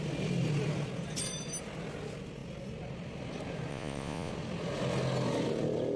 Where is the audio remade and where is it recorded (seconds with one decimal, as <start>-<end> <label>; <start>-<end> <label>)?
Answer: 0.0-3.7 recorded; 3.7-4.3 remade; 4.3-6.0 recorded